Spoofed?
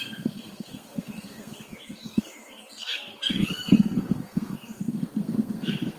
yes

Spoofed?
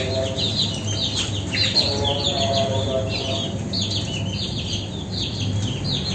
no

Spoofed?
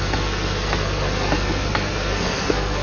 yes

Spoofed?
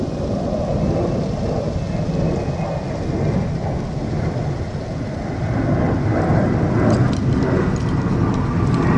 no